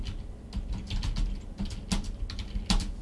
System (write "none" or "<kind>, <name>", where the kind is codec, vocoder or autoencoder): none